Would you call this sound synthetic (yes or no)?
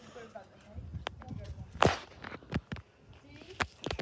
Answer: no